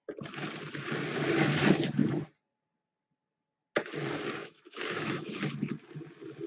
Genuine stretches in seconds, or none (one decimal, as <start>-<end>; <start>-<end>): 0.0-4.4; 5.3-6.5